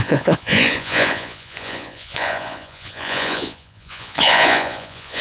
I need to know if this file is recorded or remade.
remade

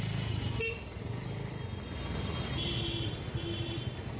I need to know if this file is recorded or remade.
recorded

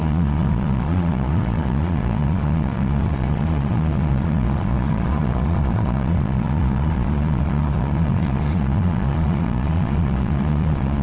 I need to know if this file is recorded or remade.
remade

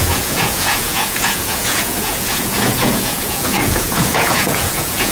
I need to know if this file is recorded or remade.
remade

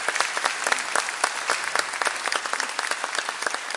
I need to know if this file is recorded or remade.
recorded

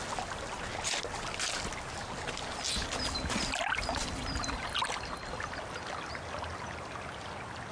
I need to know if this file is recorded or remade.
recorded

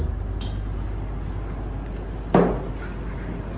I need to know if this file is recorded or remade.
recorded